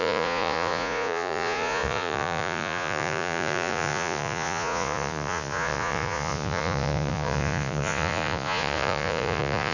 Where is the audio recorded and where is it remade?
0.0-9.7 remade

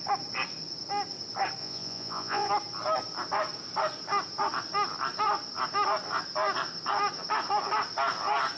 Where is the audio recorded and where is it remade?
0.0-1.6 recorded; 1.6-2.5 remade; 2.5-8.6 recorded

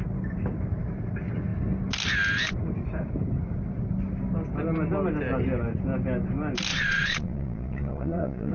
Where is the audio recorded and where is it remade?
0.0-6.7 recorded; 6.7-8.5 remade

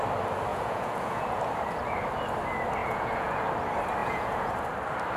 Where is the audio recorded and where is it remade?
0.0-0.5 recorded; 0.5-1.4 remade; 1.4-2.8 recorded; 2.8-3.4 remade; 3.4-4.0 recorded; 4.0-4.5 remade; 4.5-5.2 recorded